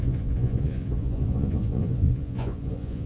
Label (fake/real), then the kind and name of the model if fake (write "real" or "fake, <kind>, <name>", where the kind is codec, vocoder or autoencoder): fake, vocoder, Vocos